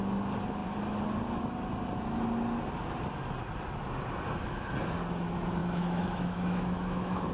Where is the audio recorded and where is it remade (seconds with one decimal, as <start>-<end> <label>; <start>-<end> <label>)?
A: 0.0-5.6 recorded; 5.6-7.3 remade